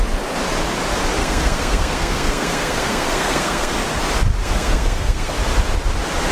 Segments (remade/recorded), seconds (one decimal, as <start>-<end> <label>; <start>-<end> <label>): 0.0-1.2 recorded; 1.2-3.7 remade; 3.7-4.4 recorded; 4.4-5.3 remade; 5.3-6.3 recorded